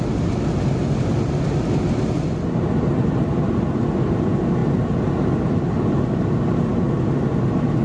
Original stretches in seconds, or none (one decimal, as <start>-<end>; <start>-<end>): 0.0-7.8